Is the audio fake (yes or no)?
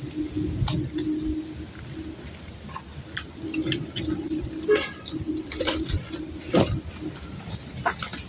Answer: no